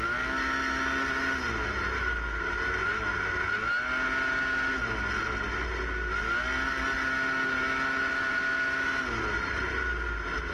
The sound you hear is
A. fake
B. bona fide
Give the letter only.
B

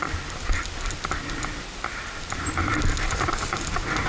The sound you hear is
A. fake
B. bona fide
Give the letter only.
B